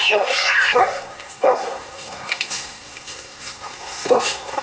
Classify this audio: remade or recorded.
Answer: remade